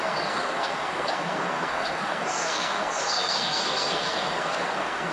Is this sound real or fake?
fake